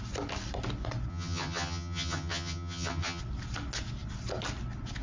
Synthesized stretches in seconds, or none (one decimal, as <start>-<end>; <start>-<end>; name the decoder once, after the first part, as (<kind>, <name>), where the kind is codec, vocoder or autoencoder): 1.1-3.2 (vocoder, HiFi-GAN)